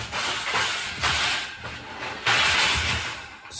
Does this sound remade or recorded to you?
recorded